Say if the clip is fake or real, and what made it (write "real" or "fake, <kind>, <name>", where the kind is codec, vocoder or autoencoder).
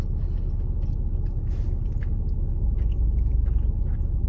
real